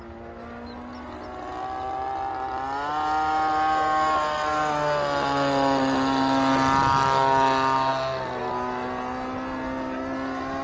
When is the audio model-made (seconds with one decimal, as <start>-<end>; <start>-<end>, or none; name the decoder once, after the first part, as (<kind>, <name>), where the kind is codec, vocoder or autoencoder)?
none